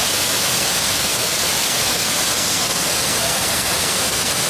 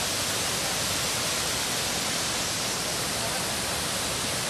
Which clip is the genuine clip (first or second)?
second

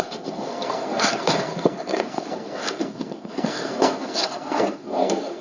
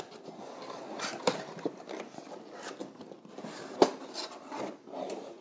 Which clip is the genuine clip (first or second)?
second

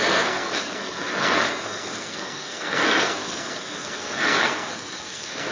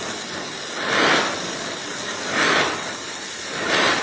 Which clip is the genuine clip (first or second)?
second